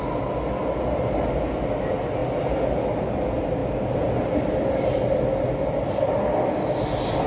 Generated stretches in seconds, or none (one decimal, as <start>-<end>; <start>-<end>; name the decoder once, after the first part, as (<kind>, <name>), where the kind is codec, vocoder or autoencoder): none